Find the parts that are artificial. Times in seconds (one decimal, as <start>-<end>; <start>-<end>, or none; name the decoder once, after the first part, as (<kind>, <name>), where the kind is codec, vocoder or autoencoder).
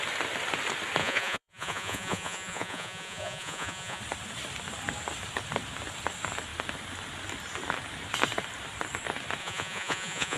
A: 1.0-4.0 (vocoder, Vocos); 9.4-10.4